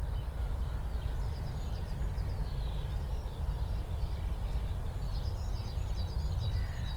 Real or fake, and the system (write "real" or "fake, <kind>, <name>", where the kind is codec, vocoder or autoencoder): real